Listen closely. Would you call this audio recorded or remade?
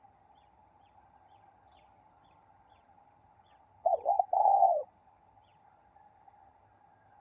remade